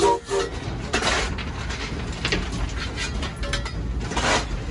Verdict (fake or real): real